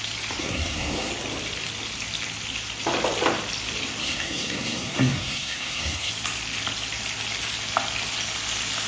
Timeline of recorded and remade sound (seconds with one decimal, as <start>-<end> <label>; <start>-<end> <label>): 0.0-0.4 recorded; 0.4-1.1 remade; 1.1-4.0 recorded; 4.0-6.1 remade; 6.1-8.9 recorded